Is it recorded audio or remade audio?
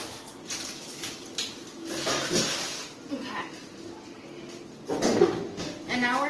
recorded